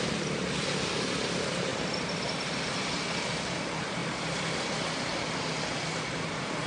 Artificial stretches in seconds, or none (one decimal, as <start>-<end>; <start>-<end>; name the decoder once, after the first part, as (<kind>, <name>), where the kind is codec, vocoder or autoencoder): none